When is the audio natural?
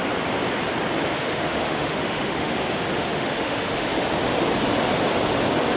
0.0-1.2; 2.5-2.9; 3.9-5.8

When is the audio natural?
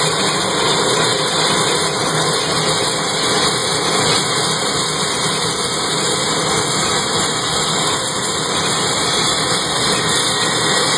0.0-11.0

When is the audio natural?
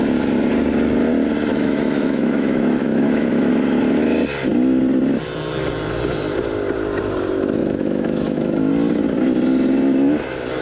0.0-1.5; 3.5-7.6; 8.7-10.6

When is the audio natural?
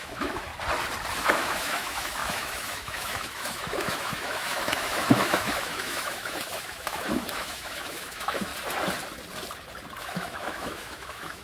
0.5-1.2; 8.5-10.0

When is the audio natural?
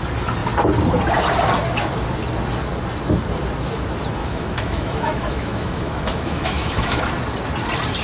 0.0-4.2; 7.0-8.0